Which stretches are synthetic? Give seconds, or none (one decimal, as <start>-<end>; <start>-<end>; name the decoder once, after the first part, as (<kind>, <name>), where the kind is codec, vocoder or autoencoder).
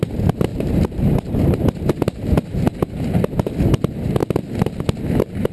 0.5-1.6 (vocoder, BigVGAN v2)